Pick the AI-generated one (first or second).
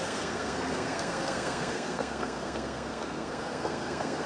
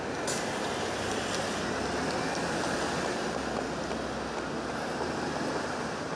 first